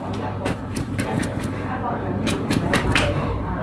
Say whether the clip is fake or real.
fake